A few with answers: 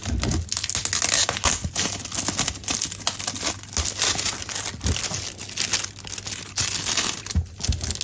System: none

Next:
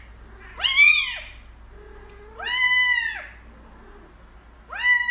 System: none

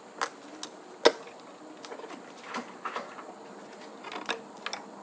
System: none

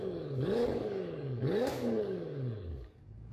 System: codec, DAC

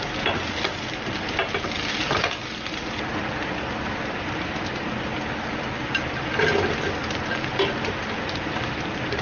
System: none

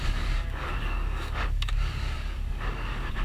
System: codec, DAC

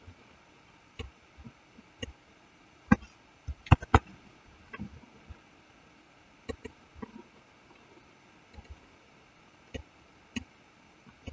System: none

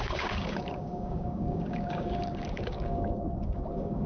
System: codec, DAC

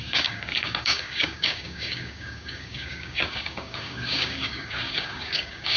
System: codec, DAC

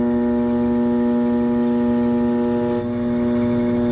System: none